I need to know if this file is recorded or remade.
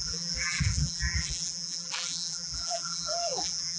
remade